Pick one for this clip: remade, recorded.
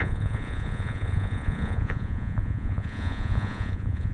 remade